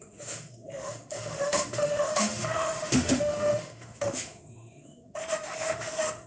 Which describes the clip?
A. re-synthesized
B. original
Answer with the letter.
A